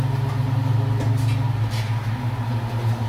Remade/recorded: recorded